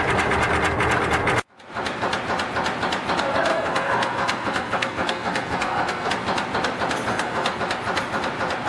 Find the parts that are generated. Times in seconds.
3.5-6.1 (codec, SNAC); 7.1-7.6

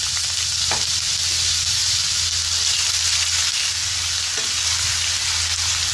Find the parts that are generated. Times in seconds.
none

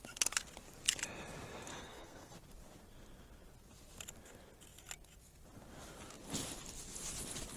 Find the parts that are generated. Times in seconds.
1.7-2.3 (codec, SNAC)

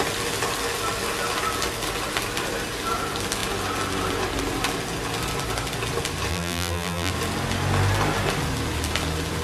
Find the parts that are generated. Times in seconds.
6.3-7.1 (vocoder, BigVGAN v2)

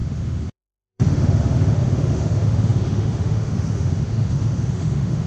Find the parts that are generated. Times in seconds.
0.0-5.3 (autoencoder, DAC-VAE)

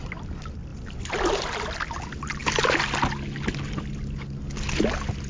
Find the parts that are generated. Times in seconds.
none

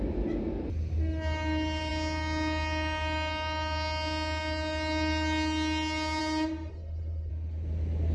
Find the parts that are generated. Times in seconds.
6.7-7.3 (codec, SNAC)

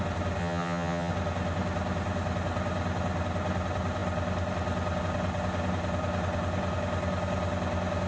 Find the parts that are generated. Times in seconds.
0.4-1.1 (vocoder, HiFi-GAN)